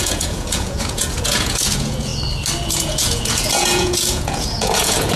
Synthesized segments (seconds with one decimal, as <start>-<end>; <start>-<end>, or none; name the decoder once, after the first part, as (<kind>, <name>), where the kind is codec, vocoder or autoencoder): 0.0-2.1 (vocoder, Vocos); 2.7-5.2